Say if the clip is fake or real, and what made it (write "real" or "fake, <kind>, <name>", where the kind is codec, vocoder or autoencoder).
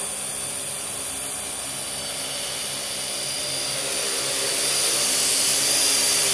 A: real